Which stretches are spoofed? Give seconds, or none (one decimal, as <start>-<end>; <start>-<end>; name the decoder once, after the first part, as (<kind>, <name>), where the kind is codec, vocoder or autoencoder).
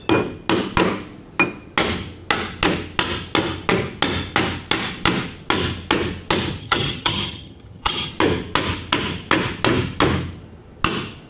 6.6-8.1 (vocoder, HiFi-GAN)